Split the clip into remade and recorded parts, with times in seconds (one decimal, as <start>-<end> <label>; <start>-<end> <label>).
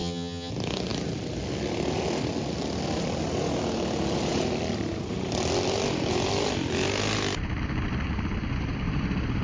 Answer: 0.0-0.5 remade; 0.5-9.4 recorded